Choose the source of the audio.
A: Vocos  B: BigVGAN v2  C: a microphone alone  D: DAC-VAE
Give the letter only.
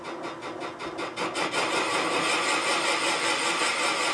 C